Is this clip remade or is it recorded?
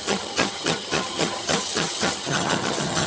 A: remade